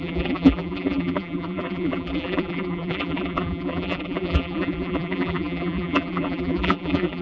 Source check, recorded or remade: remade